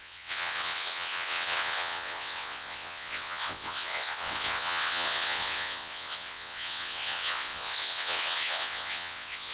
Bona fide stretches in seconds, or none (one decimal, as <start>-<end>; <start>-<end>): none